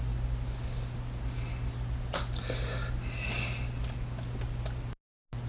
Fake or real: real